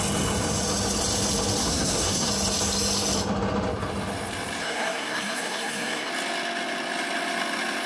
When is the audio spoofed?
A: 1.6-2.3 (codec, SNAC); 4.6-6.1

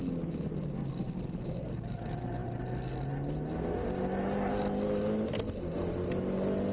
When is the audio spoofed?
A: none

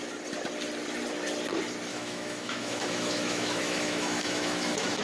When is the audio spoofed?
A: 1.9-5.0 (autoencoder, DAC-VAE)

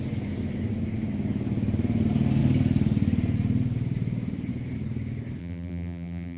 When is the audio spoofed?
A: 5.4-6.4 (vocoder, BigVGAN v2)

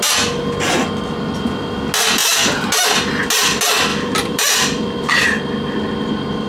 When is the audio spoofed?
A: 3.9-5.2 (vocoder, BigVGAN v2)

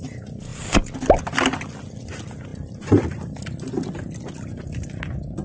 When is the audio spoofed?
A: none

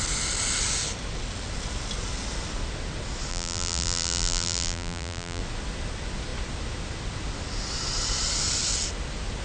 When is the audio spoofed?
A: 3.3-5.4 (vocoder, BigVGAN v2)